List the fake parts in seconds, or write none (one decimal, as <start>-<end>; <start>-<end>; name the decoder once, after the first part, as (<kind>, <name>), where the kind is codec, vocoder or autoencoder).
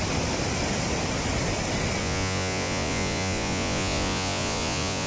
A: 2.0-5.1 (vocoder, Vocos)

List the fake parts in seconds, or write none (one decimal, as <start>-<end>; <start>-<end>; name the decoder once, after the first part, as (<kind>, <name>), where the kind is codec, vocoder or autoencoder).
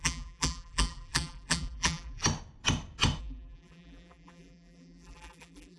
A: 0.0-2.2 (vocoder, BigVGAN v2); 3.2-5.8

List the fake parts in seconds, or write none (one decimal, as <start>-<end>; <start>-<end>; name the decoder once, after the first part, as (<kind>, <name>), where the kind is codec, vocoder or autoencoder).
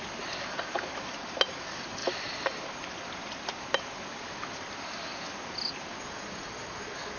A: none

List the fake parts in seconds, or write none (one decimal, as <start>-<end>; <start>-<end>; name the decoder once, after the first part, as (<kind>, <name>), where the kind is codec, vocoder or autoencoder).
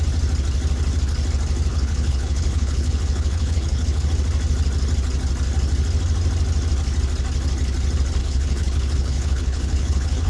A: 1.7-4.1 (codec, HILCodec); 8.2-10.3